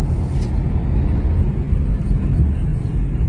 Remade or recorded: recorded